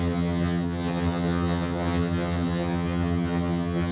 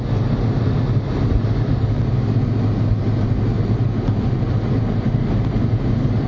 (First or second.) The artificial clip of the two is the first